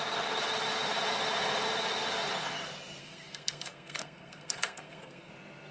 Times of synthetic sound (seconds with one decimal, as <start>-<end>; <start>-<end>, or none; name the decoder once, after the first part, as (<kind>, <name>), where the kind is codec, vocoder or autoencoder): 3.0-5.3 (codec, SNAC)